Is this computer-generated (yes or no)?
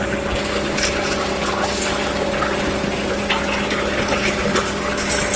no